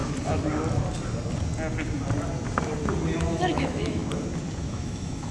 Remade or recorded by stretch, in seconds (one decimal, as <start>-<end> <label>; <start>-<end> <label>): 0.0-3.2 recorded; 3.2-4.0 remade; 4.0-4.6 recorded; 4.6-5.3 remade